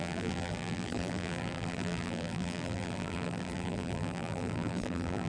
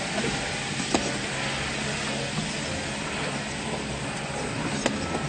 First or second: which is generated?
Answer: first